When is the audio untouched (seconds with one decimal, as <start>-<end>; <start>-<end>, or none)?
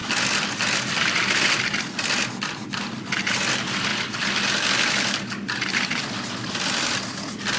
0.0-7.6